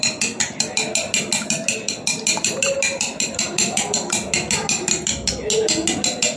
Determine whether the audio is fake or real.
real